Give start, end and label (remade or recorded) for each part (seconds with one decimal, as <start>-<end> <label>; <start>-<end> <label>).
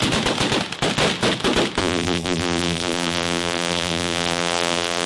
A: 0.0-1.8 recorded; 1.8-5.1 remade